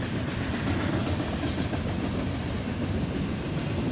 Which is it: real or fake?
real